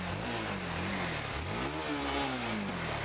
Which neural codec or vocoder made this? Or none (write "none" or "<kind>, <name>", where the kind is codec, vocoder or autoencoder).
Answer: none